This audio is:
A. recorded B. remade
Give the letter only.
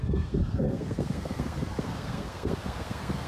B